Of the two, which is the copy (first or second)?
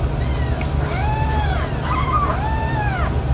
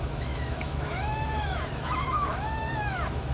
second